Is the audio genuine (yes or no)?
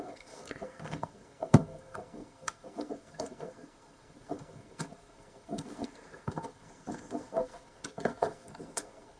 no